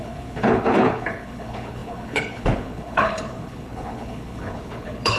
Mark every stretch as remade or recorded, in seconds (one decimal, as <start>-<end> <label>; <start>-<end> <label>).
0.0-5.2 remade